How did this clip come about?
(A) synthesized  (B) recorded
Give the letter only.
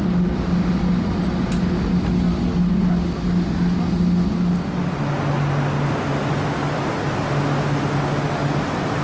B